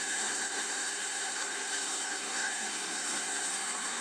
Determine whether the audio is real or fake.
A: fake